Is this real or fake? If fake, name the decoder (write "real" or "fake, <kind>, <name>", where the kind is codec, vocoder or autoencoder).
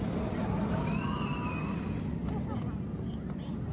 real